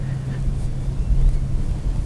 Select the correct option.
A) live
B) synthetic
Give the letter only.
A